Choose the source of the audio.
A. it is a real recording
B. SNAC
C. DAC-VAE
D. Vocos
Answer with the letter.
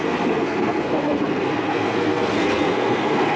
B